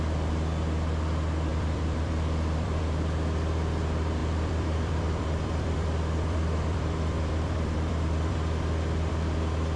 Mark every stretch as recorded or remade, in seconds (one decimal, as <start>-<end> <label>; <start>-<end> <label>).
0.0-1.5 recorded; 1.5-2.8 remade; 2.8-4.2 recorded; 4.2-9.1 remade; 9.1-9.8 recorded